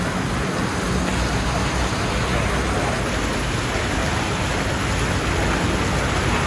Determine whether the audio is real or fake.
real